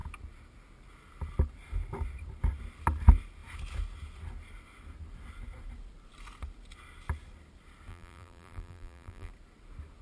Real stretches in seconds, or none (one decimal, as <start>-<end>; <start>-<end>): 0.0-7.9; 9.3-10.0